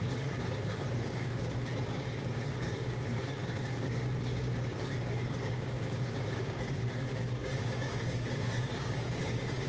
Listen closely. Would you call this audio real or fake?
fake